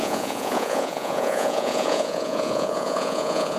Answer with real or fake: fake